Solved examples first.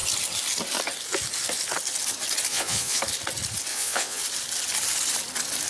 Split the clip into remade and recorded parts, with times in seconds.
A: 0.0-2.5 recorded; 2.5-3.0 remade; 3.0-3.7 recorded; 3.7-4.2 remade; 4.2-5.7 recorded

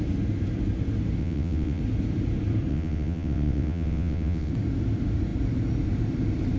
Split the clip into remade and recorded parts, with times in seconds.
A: 0.0-1.2 recorded; 1.2-1.8 remade; 1.8-2.7 recorded; 2.7-4.5 remade; 4.5-6.6 recorded

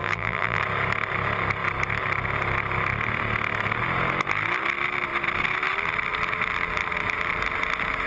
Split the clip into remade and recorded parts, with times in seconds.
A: 0.0-0.6 remade; 0.6-8.1 recorded

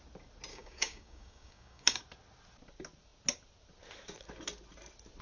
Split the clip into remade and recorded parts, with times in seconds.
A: 0.0-0.5 recorded; 0.5-2.0 remade; 2.0-5.2 recorded

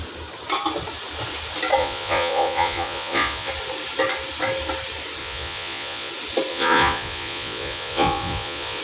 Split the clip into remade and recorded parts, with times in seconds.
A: 0.0-1.8 recorded; 1.8-3.5 remade; 3.5-5.2 recorded; 5.2-6.1 remade; 6.1-6.5 recorded; 6.5-8.8 remade